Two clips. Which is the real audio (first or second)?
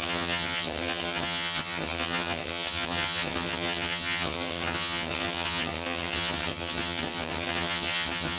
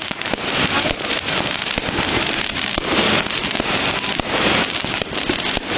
second